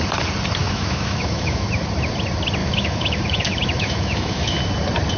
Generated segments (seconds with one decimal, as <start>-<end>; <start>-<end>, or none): 0.6-1.7; 2.6-4.6